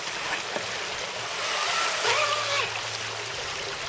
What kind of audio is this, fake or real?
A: real